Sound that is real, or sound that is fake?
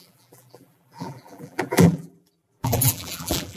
fake